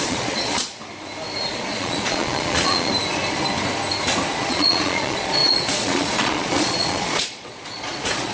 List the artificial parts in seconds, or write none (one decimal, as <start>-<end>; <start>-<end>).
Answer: 0.0-0.8; 1.5-2.9; 4.3-8.3